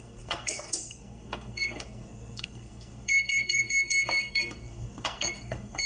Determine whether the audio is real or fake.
fake